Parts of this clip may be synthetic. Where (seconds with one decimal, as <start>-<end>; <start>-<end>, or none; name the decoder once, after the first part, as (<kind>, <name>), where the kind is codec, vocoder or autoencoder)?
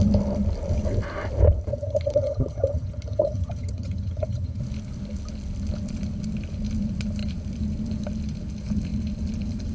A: 1.7-4.6 (vocoder, HiFi-GAN)